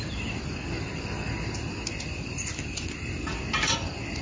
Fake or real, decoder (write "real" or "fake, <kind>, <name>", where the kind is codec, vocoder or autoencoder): real